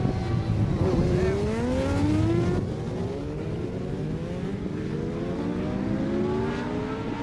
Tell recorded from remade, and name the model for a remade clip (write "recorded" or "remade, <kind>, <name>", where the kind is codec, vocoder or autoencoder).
recorded